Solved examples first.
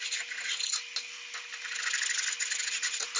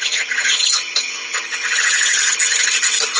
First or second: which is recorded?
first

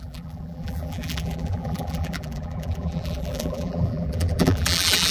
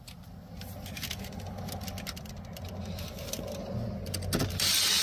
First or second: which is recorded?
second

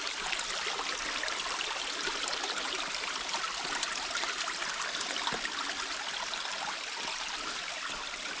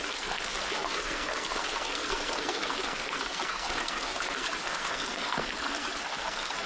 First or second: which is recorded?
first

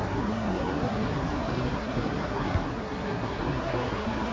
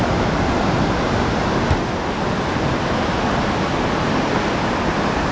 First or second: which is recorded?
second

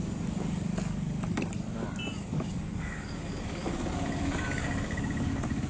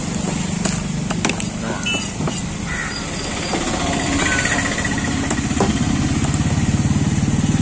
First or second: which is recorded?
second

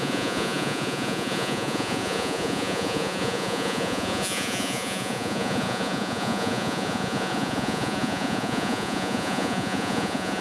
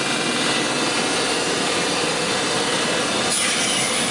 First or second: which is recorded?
second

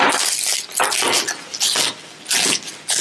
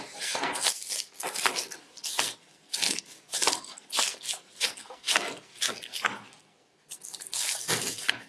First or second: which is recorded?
first